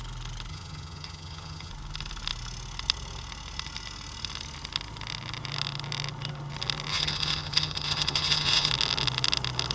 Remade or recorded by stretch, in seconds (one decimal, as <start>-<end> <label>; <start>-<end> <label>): 0.0-0.5 recorded; 0.5-1.7 remade; 1.7-6.9 recorded; 6.9-8.7 remade; 8.7-9.7 recorded